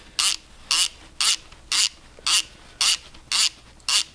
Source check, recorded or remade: recorded